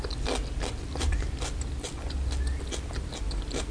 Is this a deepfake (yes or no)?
no